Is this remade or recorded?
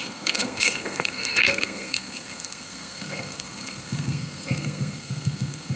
remade